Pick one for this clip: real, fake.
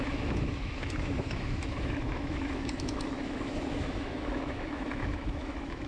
fake